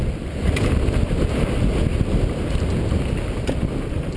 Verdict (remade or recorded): recorded